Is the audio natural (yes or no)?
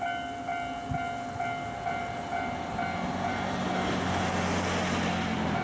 yes